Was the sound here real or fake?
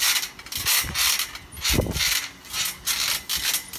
real